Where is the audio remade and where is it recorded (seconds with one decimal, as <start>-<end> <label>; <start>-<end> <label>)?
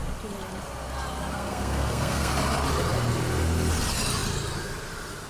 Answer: 0.0-1.3 recorded; 1.3-2.3 remade; 2.3-5.3 recorded